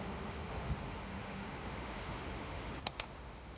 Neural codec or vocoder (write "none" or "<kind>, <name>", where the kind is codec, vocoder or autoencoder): autoencoder, DAC-VAE